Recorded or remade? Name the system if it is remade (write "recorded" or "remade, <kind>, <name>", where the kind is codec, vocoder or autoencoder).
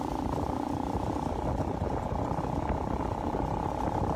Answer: recorded